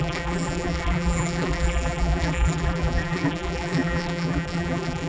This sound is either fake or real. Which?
fake